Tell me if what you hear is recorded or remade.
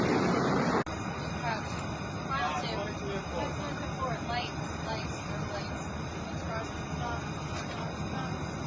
recorded